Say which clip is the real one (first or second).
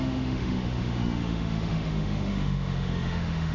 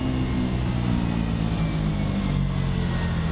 second